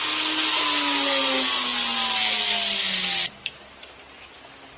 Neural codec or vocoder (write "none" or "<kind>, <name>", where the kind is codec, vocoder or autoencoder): none